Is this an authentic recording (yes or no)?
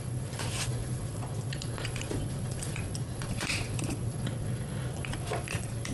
no